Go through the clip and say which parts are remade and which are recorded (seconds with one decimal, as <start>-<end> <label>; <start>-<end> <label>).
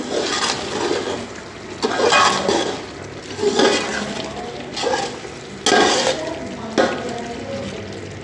0.0-8.2 recorded